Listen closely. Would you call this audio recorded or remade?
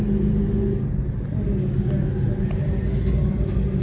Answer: recorded